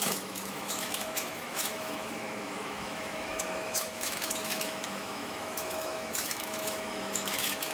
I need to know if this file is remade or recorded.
remade